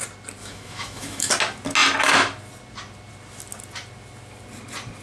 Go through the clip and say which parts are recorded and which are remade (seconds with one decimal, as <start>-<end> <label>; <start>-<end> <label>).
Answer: 0.0-0.4 recorded; 0.4-1.3 remade; 1.3-5.0 recorded

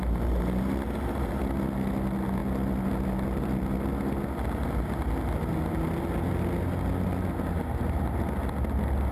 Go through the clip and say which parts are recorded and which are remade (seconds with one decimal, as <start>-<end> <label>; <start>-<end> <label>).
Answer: 0.0-9.1 recorded

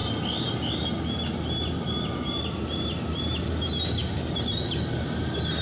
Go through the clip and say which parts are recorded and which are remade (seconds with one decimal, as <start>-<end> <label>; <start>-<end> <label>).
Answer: 0.0-5.6 recorded